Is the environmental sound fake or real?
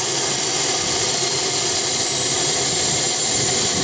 real